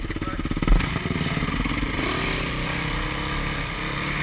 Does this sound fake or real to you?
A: real